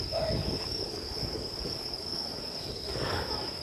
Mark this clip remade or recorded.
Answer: remade